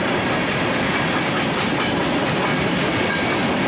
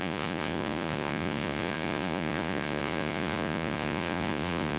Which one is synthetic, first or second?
second